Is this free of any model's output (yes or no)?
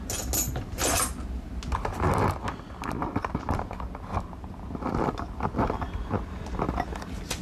yes